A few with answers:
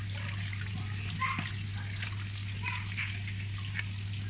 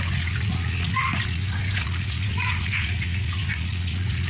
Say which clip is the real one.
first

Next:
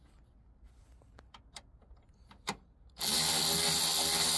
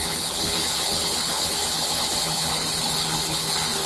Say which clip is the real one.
first